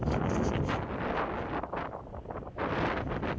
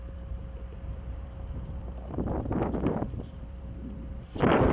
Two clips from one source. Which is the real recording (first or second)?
first